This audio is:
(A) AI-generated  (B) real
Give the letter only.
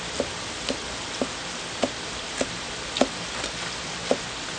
B